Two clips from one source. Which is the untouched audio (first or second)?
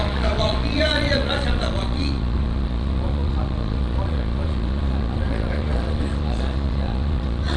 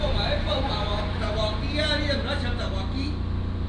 second